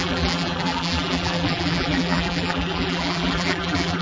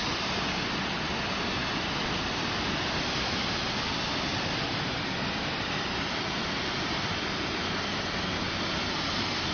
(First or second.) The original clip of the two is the second